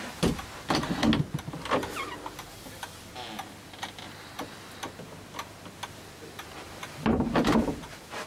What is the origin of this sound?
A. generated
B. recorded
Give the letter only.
B